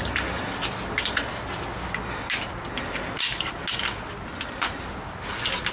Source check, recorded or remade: recorded